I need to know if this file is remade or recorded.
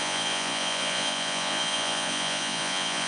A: remade